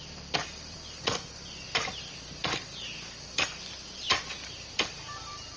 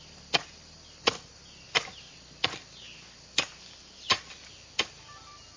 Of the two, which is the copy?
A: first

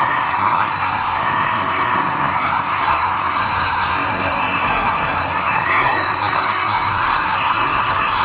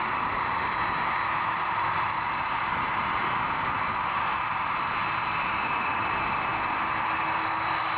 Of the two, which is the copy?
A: first